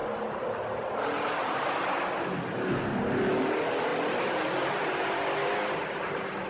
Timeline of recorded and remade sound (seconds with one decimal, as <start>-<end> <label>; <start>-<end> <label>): 0.0-6.5 recorded